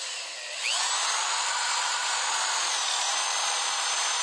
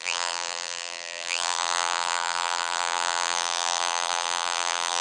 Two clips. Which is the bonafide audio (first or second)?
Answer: first